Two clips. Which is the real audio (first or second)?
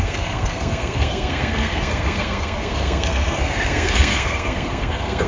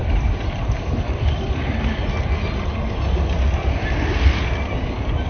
second